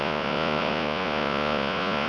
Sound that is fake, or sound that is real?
fake